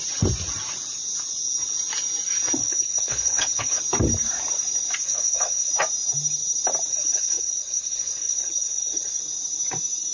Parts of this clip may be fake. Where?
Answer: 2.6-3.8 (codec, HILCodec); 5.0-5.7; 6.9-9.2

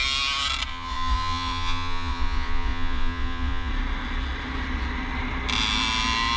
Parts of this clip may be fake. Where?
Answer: 0.7-3.7 (vocoder, Vocos)